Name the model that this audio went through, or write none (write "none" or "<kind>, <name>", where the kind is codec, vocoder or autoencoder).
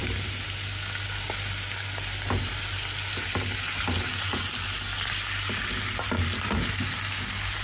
none